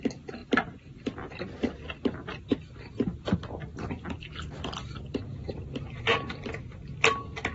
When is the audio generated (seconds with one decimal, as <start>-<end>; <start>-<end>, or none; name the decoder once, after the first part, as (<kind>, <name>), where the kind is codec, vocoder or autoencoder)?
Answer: 0.4-1.0 (vocoder, BigVGAN v2)

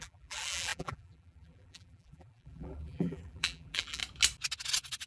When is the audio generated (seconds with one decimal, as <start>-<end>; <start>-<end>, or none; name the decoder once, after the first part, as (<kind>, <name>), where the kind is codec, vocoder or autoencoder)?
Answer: 0.0-4.0 (vocoder, BigVGAN v2)